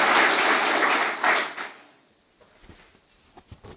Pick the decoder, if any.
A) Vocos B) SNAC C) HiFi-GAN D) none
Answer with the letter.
D